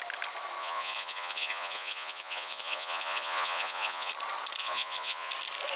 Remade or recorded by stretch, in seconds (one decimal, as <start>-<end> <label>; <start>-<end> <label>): 0.0-0.6 recorded; 0.6-4.1 remade; 4.1-4.6 recorded; 4.6-5.3 remade; 5.3-5.8 recorded